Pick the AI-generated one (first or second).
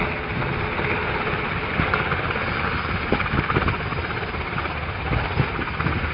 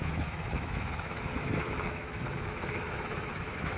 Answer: second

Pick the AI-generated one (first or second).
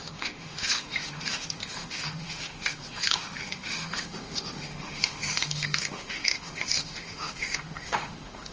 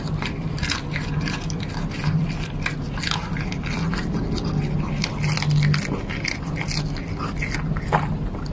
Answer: first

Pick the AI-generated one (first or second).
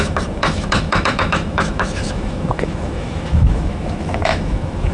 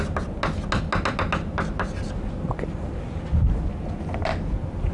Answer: first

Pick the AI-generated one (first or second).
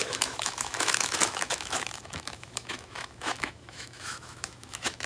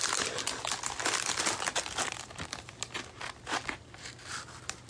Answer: first